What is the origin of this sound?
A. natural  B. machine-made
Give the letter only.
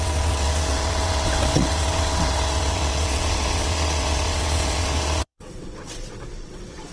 B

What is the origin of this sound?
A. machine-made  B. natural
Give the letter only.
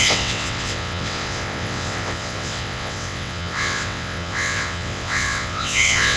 A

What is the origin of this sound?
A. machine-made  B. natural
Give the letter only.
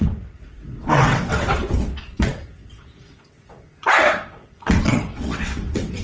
A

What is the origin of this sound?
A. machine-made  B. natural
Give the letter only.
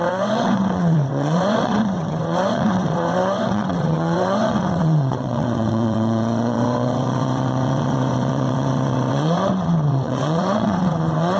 A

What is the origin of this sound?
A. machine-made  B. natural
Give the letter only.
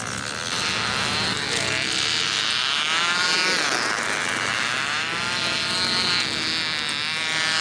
B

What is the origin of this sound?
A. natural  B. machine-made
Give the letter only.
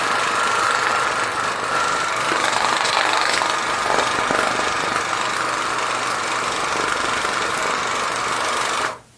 A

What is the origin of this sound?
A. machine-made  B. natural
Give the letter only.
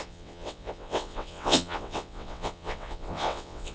A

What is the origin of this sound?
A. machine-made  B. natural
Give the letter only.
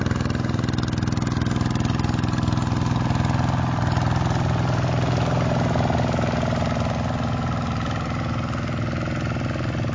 B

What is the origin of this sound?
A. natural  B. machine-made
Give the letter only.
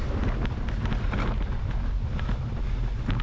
A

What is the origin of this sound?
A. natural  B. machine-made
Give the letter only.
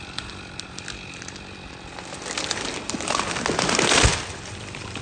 A